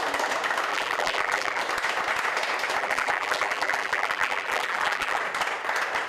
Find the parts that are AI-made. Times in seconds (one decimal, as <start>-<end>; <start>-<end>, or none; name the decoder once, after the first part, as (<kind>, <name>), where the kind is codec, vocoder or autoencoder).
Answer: 0.7-1.6 (vocoder, BigVGAN v2); 2.8-5.2